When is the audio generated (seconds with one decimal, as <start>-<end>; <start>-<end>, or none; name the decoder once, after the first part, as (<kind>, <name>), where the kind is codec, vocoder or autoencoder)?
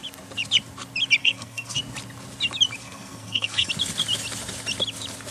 1.2-1.8 (codec, SNAC); 2.8-3.7